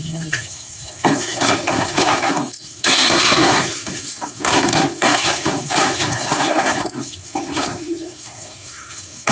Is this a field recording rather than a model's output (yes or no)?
no